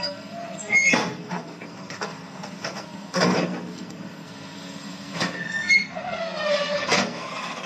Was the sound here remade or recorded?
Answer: remade